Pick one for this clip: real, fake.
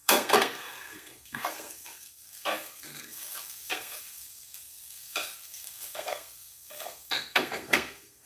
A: fake